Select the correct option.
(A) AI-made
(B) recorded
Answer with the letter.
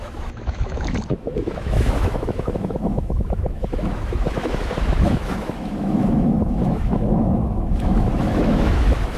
A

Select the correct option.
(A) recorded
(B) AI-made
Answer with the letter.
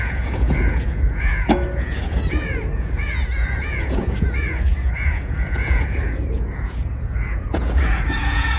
B